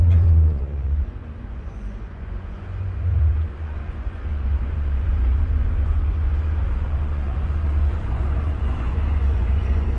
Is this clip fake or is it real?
fake